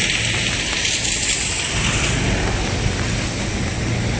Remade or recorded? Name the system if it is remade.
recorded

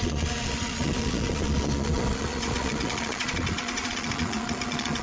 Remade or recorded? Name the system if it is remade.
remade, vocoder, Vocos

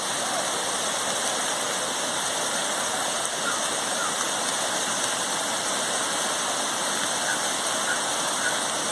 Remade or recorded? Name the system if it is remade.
recorded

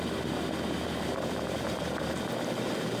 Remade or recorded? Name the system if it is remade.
recorded